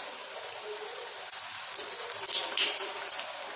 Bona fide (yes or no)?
yes